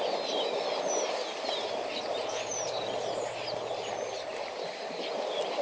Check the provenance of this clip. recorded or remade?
recorded